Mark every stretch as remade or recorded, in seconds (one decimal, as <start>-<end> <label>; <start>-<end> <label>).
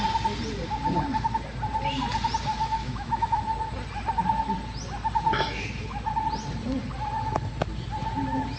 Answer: 0.0-2.5 recorded; 2.5-3.4 remade; 3.4-8.6 recorded